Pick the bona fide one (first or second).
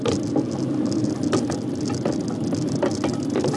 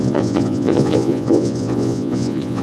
first